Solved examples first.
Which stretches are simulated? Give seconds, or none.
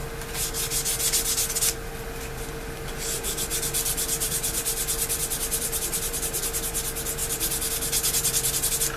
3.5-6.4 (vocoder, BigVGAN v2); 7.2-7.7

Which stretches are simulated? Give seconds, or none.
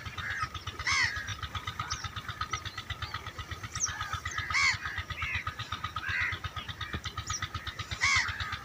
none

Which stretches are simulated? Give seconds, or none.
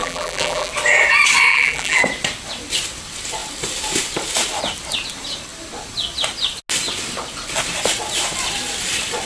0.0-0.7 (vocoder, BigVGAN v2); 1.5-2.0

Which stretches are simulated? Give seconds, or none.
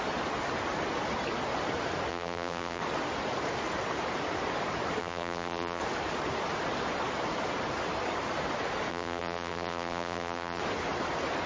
2.1-2.8 (vocoder, BigVGAN v2); 5.0-5.8; 8.9-10.6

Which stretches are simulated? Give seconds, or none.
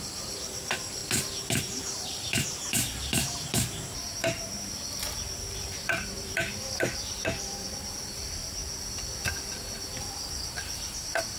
0.0-1.0 (vocoder, BigVGAN v2); 1.8-8.6; 10.0-11.4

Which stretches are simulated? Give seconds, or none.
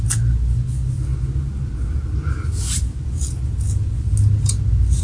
none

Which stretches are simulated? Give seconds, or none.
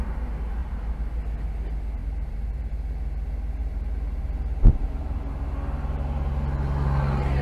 0.6-1.2 (vocoder, BigVGAN v2); 2.0-2.7; 3.6-5.2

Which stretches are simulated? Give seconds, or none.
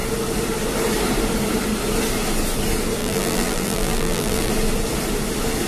3.0-4.5 (vocoder, BigVGAN v2)